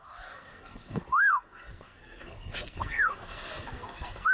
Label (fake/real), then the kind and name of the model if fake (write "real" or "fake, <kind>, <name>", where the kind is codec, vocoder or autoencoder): fake, codec, SNAC